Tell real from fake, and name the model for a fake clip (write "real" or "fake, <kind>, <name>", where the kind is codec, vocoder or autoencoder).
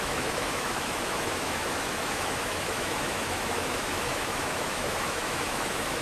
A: fake, autoencoder, DAC-VAE